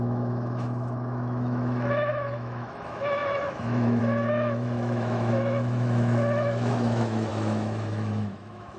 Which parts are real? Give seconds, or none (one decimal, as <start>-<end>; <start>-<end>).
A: none